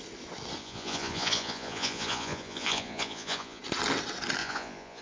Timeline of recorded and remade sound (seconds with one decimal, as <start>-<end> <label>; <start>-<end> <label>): 0.0-0.6 recorded; 0.6-3.6 remade; 3.6-4.4 recorded; 4.4-5.0 remade